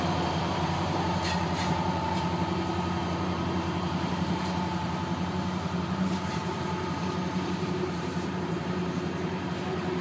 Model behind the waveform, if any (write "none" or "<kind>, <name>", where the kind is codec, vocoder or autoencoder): vocoder, BigVGAN v2